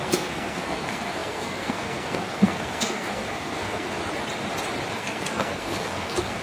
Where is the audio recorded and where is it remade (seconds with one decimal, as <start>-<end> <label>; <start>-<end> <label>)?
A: 0.0-4.0 remade; 4.0-4.9 recorded; 4.9-6.4 remade